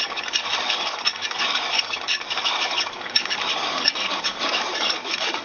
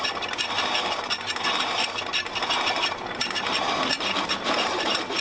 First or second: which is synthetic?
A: first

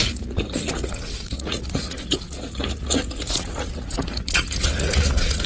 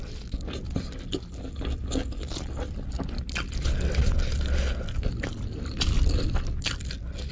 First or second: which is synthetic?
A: first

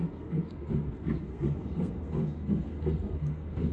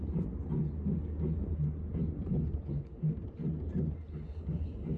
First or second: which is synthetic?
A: first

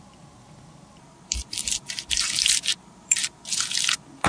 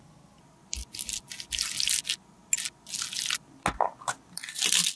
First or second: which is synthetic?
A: first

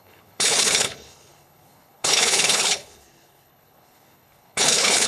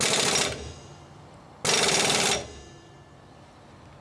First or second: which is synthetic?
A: first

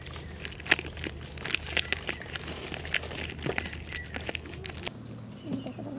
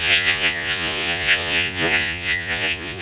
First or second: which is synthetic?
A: second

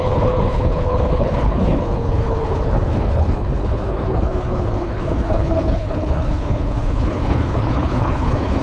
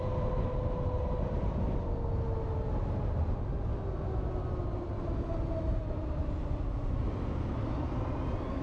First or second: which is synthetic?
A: first